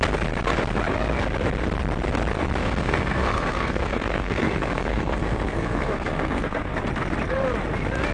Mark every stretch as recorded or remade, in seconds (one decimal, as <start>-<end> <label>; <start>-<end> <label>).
0.0-2.6 recorded; 2.6-6.8 remade; 6.8-8.1 recorded